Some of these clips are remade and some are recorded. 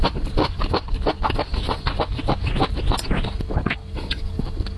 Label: recorded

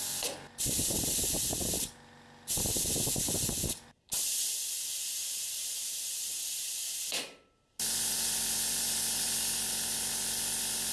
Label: recorded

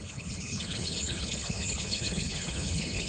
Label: remade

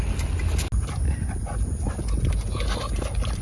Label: recorded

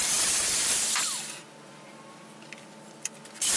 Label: recorded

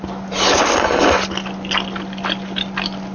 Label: recorded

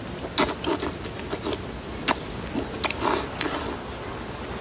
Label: recorded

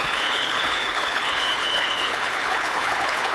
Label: remade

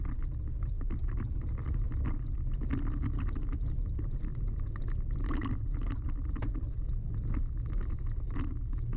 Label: recorded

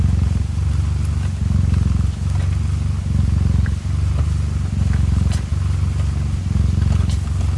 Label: recorded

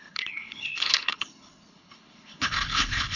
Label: remade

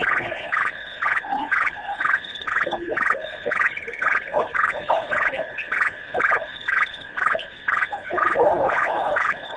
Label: remade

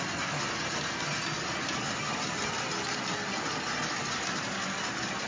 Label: recorded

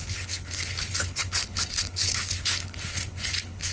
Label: remade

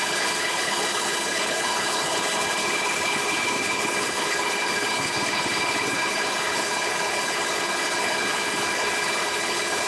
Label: remade